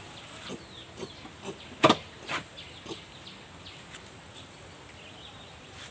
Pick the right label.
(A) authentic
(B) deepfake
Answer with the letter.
A